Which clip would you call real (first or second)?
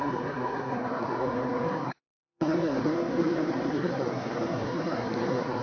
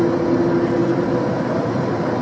second